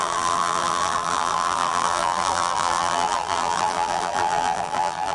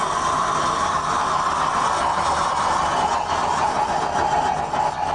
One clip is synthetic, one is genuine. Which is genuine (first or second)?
second